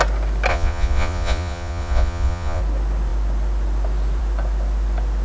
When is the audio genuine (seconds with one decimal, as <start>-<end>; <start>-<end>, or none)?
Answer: 0.0-0.5; 2.6-5.2